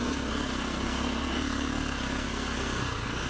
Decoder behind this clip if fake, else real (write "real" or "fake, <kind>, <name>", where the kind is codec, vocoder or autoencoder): fake, codec, SNAC